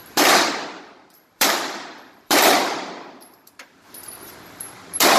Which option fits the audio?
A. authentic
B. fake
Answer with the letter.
B